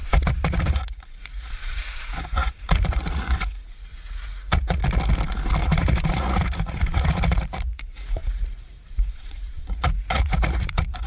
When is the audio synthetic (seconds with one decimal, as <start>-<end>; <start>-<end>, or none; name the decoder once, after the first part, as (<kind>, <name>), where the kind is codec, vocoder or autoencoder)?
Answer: 0.0-4.8 (vocoder, Vocos); 5.6-11.1